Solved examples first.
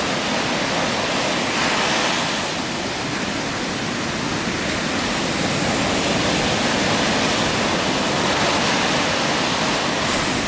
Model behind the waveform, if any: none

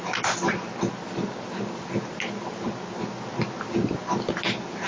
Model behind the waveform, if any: none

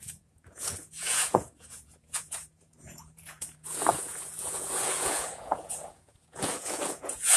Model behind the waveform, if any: vocoder, Vocos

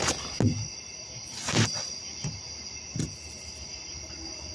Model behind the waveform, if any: none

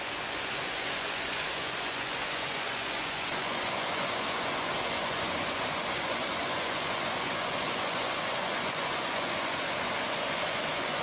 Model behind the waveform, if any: vocoder, Vocos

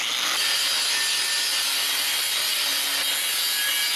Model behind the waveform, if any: none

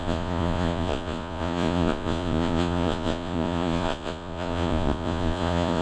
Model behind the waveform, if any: vocoder, Vocos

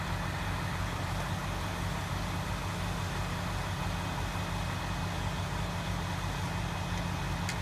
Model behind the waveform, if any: none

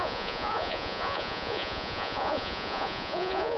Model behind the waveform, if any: vocoder, Vocos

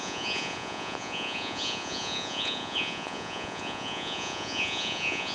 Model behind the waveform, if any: vocoder, Vocos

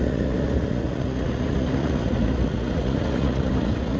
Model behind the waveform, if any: vocoder, Vocos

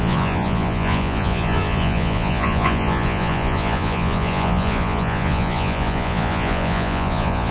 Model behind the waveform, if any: vocoder, Vocos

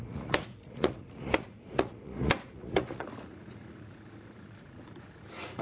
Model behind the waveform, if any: vocoder, Vocos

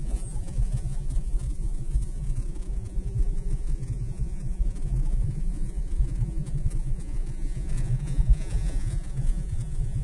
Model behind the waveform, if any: vocoder, Vocos